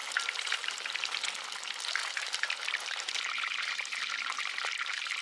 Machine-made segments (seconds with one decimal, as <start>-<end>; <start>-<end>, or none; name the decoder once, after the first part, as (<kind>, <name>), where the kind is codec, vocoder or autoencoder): 0.0-1.4 (vocoder, BigVGAN v2); 2.0-5.2